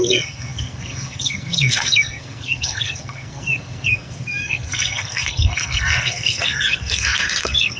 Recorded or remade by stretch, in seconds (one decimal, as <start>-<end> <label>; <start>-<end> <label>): 0.0-7.8 remade